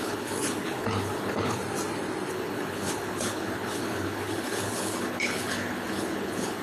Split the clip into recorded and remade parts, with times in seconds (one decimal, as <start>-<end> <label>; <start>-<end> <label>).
0.0-1.6 remade; 1.6-2.3 recorded; 2.3-6.6 remade